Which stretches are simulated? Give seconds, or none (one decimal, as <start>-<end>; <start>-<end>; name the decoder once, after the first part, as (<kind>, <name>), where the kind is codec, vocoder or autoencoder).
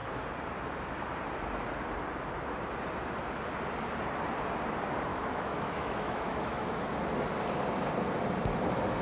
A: 5.1-6.8 (autoencoder, DAC-VAE)